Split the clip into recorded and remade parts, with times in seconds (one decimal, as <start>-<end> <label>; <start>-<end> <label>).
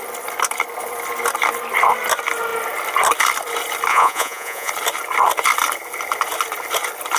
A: 0.0-3.9 recorded; 3.9-4.7 remade; 4.7-7.2 recorded